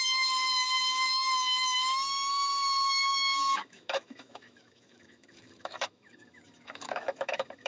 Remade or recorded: remade